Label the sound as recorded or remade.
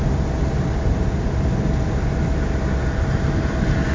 recorded